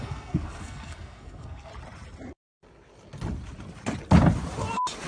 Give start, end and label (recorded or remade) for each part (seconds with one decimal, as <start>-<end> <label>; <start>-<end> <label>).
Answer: 0.0-1.7 remade; 1.7-5.1 recorded